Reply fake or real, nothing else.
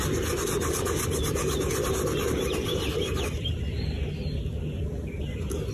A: real